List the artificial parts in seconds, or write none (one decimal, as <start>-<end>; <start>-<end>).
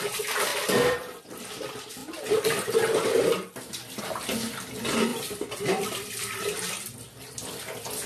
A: 0.5-1.2; 5.1-6.7